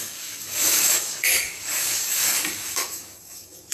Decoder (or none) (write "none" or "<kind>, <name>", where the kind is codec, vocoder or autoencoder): codec, DAC